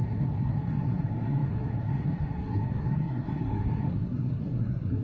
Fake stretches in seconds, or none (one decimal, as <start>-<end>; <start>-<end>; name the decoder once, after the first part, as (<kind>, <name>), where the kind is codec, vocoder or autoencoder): 0.0-5.0 (codec, SNAC)